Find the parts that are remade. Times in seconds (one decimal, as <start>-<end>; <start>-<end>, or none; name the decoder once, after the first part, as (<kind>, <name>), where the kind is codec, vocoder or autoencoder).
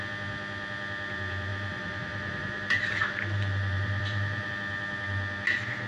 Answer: 1.5-4.5 (vocoder, BigVGAN v2)